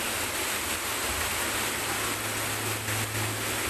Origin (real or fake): real